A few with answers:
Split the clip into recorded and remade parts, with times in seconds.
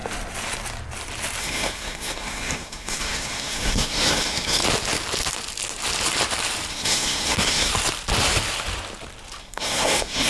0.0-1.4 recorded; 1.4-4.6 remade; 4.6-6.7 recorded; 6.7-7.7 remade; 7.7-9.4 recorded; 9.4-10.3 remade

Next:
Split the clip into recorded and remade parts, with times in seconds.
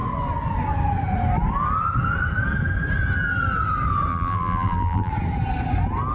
0.0-4.1 recorded; 4.1-5.1 remade; 5.1-6.1 recorded